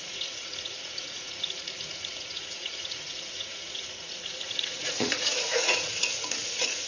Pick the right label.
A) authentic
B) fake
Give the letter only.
B